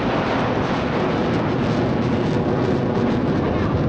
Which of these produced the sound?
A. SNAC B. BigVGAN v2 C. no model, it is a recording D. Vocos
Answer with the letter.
C